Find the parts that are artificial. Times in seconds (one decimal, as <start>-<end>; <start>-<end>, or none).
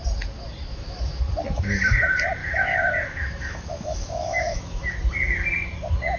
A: 0.7-1.2; 2.4-5.0